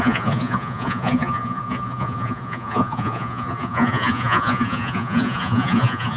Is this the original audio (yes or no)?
no